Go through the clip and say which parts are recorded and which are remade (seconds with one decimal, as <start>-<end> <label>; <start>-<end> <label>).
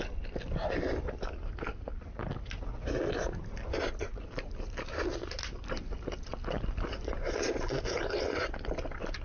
0.0-4.0 recorded; 4.0-5.0 remade; 5.0-9.2 recorded